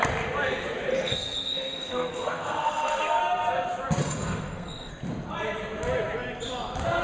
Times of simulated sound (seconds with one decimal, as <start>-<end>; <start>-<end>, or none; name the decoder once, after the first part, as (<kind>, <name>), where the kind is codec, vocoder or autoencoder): 0.9-3.2 (codec, SNAC); 4.0-4.9